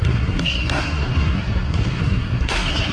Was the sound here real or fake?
fake